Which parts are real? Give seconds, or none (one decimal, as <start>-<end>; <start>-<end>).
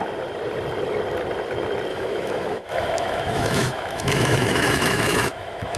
0.0-1.9